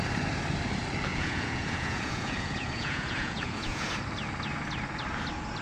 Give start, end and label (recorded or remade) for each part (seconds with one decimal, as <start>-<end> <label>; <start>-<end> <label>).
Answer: 0.0-1.1 recorded; 1.1-3.9 remade; 3.9-5.6 recorded